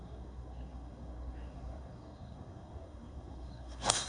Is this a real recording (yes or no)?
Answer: no